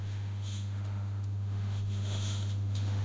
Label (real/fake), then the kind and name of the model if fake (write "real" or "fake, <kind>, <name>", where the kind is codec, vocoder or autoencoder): fake, autoencoder, DAC-VAE